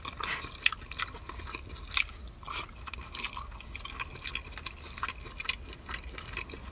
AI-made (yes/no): no